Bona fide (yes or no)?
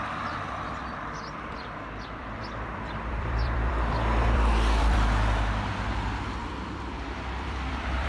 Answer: no